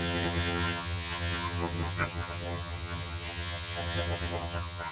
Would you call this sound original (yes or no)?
no